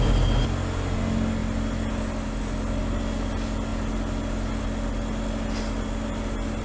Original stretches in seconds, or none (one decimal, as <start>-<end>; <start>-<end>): 0.0-6.6